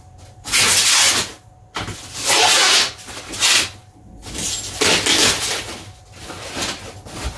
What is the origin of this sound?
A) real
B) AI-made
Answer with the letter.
A